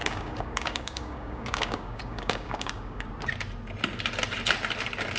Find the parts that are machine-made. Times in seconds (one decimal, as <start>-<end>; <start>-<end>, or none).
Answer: 0.0-3.1